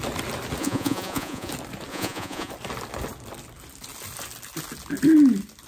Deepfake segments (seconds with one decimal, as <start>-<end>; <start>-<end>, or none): 0.6-1.5; 1.9-2.5